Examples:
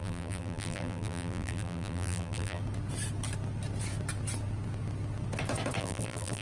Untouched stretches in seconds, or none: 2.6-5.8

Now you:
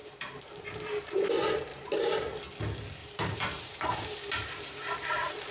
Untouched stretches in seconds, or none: 1.1-1.7; 2.4-3.0

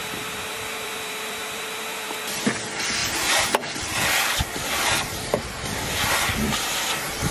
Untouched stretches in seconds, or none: 2.2-7.3

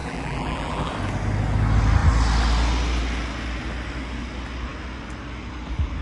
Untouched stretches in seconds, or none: 0.9-6.0

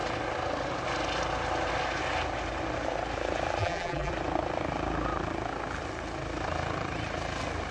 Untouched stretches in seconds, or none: 0.0-3.6; 4.1-7.7

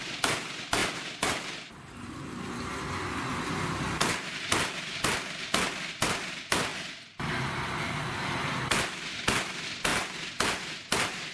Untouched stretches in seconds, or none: 0.0-11.3

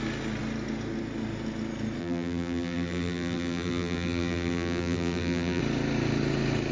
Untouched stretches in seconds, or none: 0.0-2.0; 5.6-6.7